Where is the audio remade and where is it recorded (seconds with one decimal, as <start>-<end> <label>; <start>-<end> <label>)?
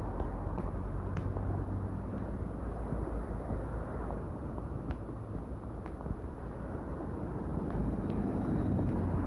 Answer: 0.0-9.3 recorded